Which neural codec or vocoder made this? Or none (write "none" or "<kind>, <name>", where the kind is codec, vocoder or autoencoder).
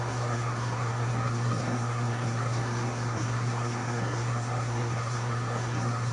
codec, SNAC